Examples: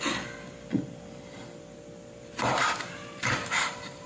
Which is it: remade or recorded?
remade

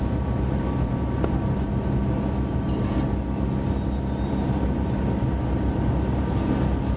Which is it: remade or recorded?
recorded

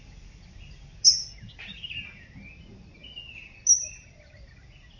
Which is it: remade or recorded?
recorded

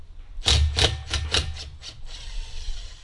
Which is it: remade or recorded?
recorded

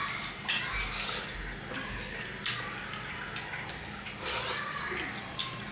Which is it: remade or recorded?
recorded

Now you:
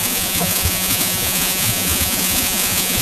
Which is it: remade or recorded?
remade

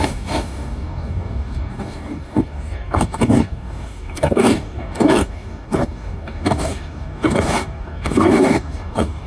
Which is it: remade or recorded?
remade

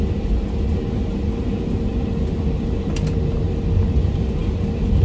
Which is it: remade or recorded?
recorded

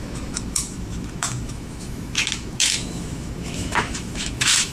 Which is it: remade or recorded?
remade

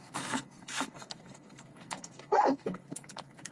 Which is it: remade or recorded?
remade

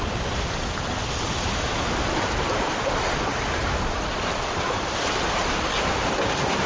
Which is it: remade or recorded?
recorded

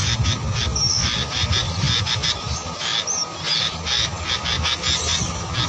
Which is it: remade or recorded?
recorded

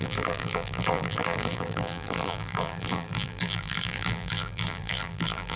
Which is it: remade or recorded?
remade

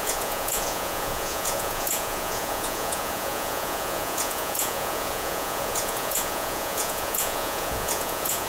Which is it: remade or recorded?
remade